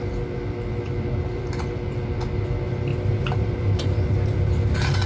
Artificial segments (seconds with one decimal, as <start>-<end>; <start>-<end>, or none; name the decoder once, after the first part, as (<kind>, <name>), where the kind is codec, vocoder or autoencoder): 2.9-4.4 (vocoder, BigVGAN v2)